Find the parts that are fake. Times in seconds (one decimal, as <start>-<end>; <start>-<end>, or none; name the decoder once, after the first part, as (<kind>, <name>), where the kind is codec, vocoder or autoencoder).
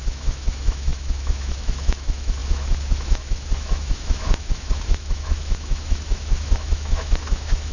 0.0-7.7 (autoencoder, DAC-VAE)